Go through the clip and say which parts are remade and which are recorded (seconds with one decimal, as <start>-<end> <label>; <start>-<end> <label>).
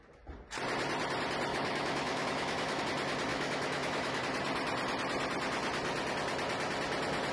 0.0-1.5 recorded; 1.5-2.8 remade; 2.8-3.3 recorded; 3.3-4.2 remade; 4.2-7.3 recorded